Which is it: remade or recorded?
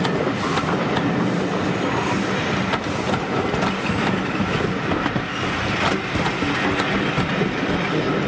recorded